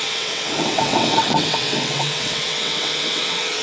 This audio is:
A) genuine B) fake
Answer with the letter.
B